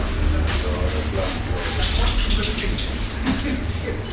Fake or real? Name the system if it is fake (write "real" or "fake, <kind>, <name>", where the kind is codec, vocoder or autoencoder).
real